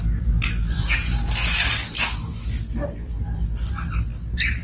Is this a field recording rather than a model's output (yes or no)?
yes